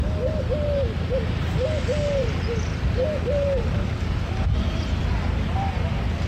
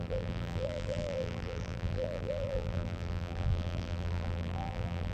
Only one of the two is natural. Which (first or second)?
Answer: first